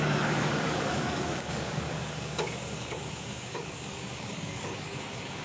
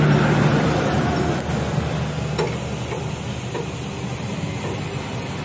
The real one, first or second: second